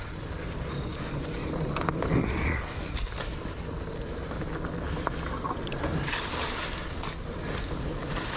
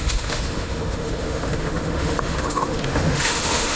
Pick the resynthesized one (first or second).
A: second